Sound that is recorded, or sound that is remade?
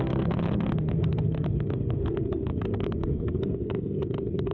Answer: remade